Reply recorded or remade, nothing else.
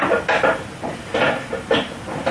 recorded